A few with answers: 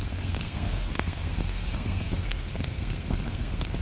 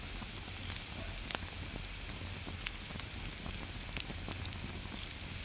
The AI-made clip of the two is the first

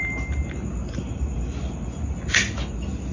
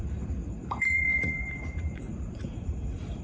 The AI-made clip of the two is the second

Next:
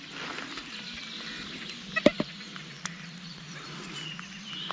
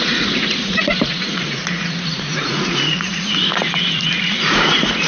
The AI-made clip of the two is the second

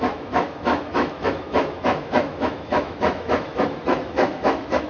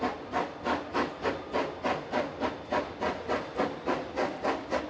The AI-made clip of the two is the first